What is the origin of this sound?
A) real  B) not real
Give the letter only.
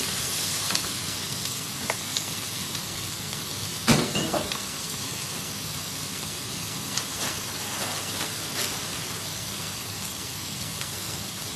B